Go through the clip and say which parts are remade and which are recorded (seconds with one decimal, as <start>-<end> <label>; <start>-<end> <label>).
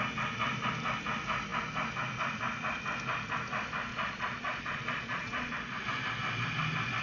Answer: 0.0-3.9 recorded; 3.9-5.5 remade; 5.5-7.0 recorded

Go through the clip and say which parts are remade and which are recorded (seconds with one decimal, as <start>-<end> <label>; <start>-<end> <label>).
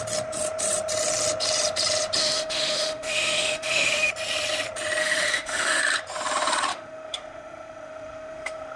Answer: 0.0-2.2 recorded; 2.2-4.1 remade; 4.1-5.0 recorded; 5.0-5.8 remade; 5.8-6.7 recorded; 6.7-8.8 remade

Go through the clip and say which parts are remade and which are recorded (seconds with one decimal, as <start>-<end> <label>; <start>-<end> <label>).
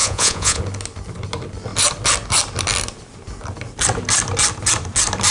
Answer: 0.0-0.6 remade; 0.6-5.3 recorded